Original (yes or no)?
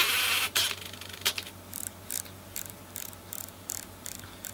yes